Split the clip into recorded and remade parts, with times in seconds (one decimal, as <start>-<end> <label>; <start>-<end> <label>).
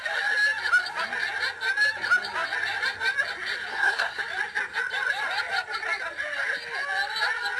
0.0-3.7 recorded; 3.7-4.2 remade; 4.2-7.6 recorded